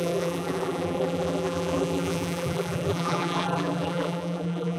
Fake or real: fake